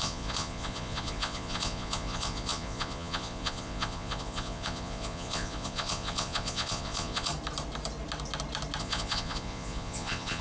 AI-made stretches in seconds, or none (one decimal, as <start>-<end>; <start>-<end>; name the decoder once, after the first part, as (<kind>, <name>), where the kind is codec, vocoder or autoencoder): 0.0-7.3 (vocoder, Vocos); 8.8-10.4

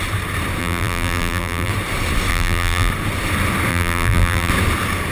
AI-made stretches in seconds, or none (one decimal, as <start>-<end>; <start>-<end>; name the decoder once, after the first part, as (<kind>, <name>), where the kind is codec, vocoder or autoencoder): 0.6-1.7 (vocoder, BigVGAN v2); 2.3-2.9; 3.7-4.5